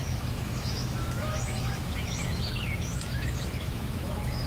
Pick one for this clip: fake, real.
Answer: fake